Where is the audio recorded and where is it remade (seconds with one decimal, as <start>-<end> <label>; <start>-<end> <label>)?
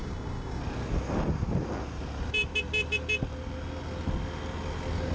0.0-0.6 remade; 0.6-5.1 recorded